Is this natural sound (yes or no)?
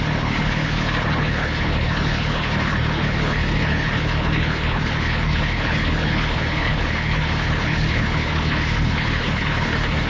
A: no